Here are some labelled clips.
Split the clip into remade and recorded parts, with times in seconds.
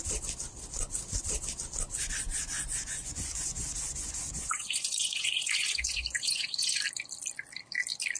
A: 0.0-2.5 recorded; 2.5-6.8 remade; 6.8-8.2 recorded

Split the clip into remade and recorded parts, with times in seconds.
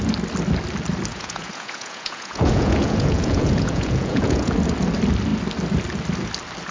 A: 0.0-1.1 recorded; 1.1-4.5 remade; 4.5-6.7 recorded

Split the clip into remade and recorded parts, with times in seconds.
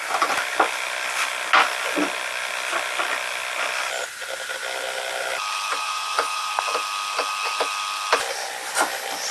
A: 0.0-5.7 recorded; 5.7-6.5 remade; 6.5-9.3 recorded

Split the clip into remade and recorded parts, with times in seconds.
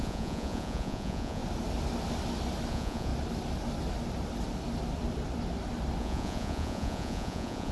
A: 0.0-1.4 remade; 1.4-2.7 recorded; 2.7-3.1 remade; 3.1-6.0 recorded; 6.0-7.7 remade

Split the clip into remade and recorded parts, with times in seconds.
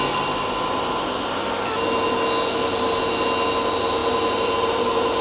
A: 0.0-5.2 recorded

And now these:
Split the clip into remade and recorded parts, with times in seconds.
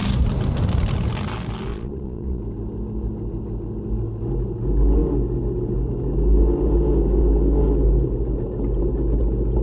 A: 0.0-1.7 recorded; 1.7-2.4 remade; 2.4-9.6 recorded